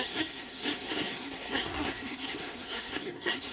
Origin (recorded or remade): remade